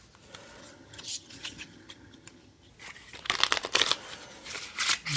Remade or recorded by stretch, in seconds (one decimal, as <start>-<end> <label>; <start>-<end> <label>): 0.0-0.6 recorded; 0.6-2.7 remade; 2.7-5.2 recorded